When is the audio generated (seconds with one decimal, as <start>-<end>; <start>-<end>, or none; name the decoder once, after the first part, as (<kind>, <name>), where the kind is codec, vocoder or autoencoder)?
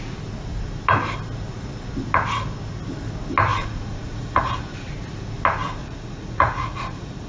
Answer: 3.5-4.9 (vocoder, Vocos); 5.8-7.3